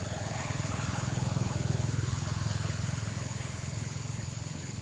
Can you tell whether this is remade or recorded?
remade